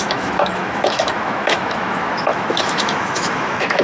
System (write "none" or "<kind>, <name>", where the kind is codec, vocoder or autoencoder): autoencoder, DAC-VAE